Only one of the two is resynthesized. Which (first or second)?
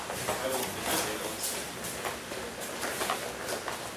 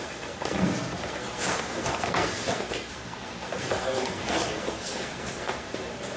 second